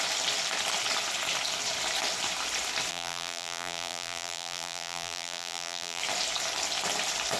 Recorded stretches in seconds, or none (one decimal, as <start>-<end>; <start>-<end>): 0.0-2.9; 6.0-7.4